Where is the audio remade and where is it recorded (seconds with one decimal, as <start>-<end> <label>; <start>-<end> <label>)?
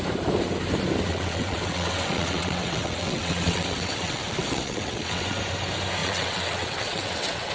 0.0-1.1 recorded; 1.1-5.4 remade; 5.4-6.0 recorded; 6.0-7.5 remade